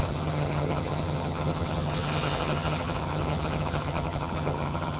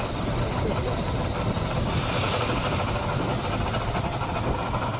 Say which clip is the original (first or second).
second